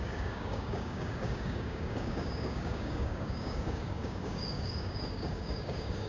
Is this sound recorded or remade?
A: remade